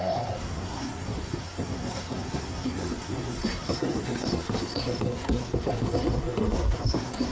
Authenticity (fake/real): fake